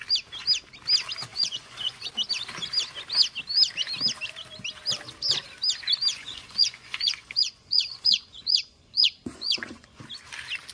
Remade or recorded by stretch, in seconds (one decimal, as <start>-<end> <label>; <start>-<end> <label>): 0.0-1.3 recorded; 1.3-2.1 remade; 2.1-6.1 recorded; 6.1-10.0 remade; 10.0-10.7 recorded